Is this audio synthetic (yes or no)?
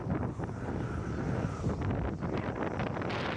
no